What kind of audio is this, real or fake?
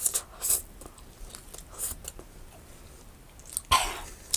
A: real